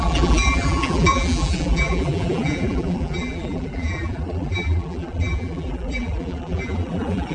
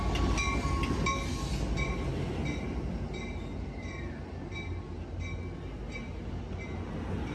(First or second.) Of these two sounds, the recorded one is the second